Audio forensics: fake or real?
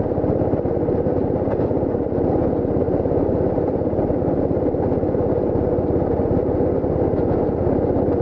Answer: real